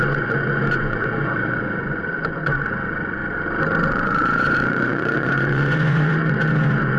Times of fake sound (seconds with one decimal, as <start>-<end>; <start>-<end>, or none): 0.0-3.2; 3.9-7.0